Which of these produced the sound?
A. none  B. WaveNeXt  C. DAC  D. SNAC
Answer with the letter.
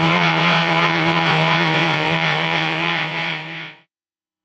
B